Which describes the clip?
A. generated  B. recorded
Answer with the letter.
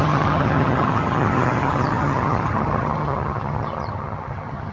A